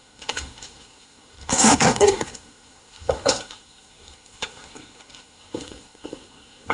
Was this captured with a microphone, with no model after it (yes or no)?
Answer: no